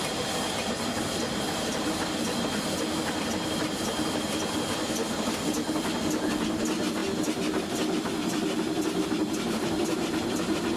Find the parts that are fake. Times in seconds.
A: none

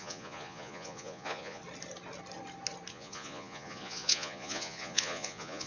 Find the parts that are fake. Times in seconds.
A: 0.0-1.6 (vocoder, Vocos); 2.9-5.7

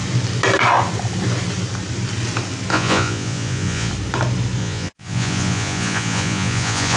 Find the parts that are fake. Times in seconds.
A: 2.7-3.9 (vocoder, Vocos); 4.6-7.0

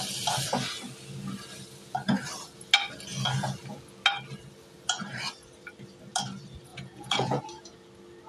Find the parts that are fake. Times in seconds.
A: 6.7-7.4 (vocoder, Vocos)

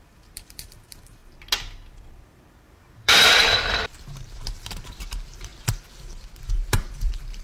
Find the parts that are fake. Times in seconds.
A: 0.0-1.2 (vocoder, BigVGAN v2); 2.7-5.5; 6.4-7.4